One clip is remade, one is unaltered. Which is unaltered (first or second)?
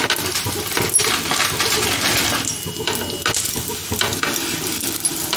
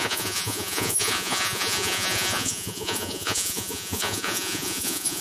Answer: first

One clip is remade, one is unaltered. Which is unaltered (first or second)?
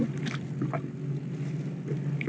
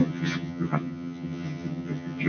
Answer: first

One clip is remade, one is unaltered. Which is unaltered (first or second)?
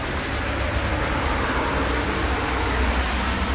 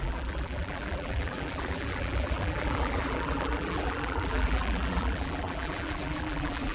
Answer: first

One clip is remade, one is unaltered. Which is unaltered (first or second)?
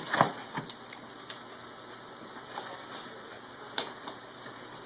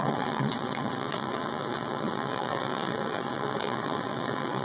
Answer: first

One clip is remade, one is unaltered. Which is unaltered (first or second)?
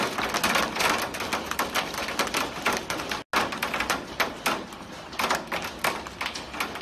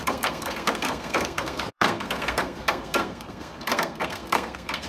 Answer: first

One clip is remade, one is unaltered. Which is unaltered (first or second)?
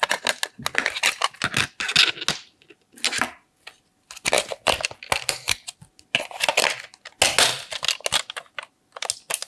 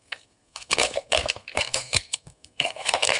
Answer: first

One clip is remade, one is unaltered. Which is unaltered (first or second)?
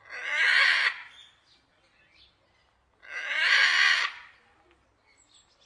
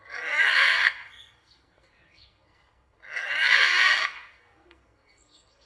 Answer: first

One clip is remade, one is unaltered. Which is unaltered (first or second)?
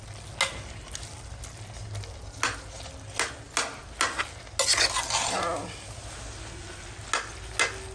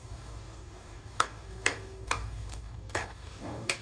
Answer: first